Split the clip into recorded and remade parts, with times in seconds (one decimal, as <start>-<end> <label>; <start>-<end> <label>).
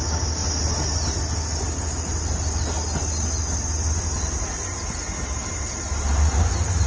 0.0-6.9 recorded